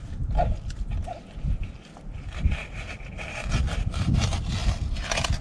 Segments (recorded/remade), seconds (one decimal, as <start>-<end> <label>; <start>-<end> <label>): 0.0-5.4 recorded